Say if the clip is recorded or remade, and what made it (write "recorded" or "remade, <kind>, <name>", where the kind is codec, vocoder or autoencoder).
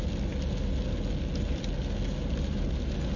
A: recorded